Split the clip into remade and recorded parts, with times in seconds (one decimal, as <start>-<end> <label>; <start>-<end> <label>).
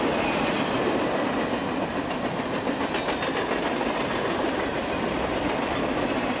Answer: 0.0-6.4 recorded